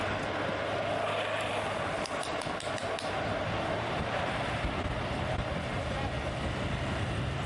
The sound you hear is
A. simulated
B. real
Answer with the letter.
B